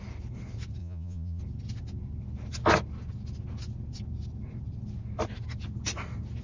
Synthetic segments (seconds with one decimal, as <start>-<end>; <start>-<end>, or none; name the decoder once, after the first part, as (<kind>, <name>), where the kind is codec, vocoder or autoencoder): 0.8-1.4 (vocoder, Vocos)